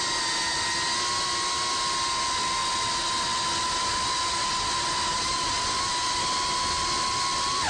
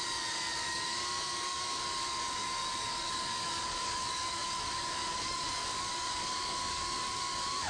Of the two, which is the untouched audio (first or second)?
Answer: first